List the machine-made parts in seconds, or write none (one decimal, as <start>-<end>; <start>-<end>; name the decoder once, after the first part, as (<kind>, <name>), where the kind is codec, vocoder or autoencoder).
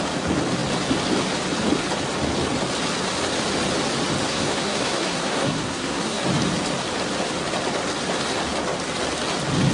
4.3-6.2 (codec, SNAC)